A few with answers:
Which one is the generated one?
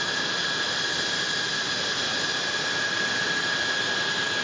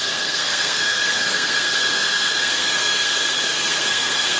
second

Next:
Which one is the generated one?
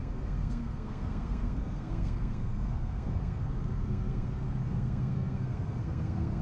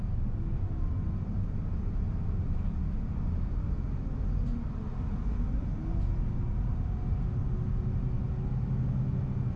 first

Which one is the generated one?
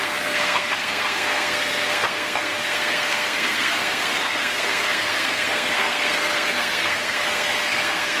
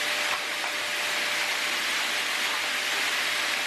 first